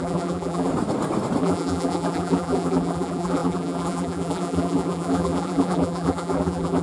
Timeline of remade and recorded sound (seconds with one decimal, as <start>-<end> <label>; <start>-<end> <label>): 0.0-0.7 remade; 0.7-1.4 recorded; 1.4-6.8 remade